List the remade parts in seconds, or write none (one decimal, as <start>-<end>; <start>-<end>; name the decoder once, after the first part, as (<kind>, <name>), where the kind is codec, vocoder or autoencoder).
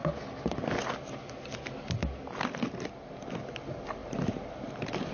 3.1-5.1 (vocoder, BigVGAN v2)